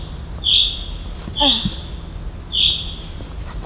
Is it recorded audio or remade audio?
recorded